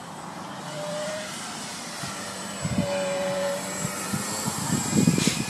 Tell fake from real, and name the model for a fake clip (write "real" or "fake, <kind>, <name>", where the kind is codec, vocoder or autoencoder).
fake, vocoder, BigVGAN v2